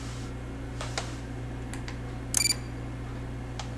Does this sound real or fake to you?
real